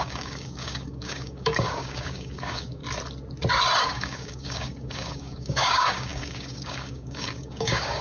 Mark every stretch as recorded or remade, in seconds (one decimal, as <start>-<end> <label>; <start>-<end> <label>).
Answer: 0.0-2.8 remade; 2.8-3.8 recorded; 3.8-8.0 remade